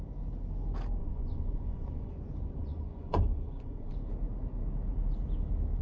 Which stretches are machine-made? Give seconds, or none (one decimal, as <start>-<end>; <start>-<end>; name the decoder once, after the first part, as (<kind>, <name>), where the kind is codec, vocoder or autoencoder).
1.0-2.1 (vocoder, Vocos); 2.6-3.9